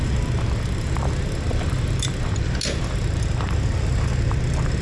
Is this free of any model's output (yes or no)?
yes